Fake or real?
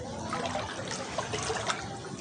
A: real